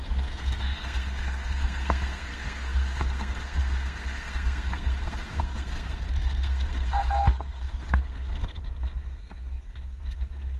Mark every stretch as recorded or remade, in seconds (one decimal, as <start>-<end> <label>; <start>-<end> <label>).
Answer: 0.0-10.6 remade